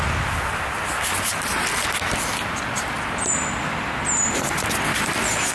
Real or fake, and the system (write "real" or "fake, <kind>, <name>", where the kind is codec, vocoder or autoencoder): real